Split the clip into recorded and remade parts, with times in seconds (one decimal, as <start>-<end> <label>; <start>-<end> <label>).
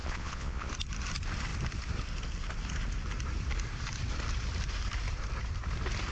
0.0-0.7 remade; 0.7-6.1 recorded